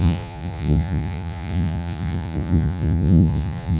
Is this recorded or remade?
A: remade